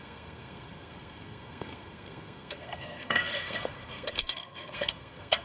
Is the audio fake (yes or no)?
yes